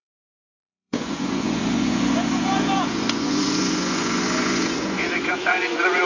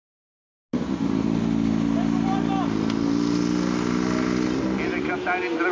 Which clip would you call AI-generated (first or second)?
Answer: first